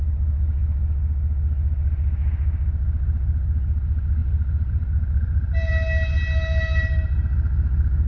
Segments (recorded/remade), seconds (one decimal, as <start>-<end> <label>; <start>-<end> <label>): 0.0-4.2 recorded; 4.2-5.7 remade; 5.7-8.1 recorded